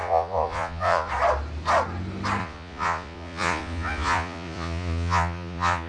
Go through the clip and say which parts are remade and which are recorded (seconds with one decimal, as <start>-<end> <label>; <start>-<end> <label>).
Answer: 0.0-1.1 remade; 1.1-2.4 recorded; 2.4-5.9 remade